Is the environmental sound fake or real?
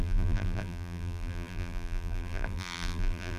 fake